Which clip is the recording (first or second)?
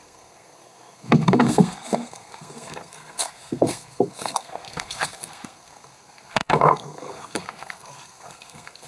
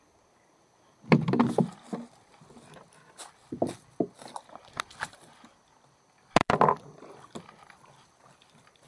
second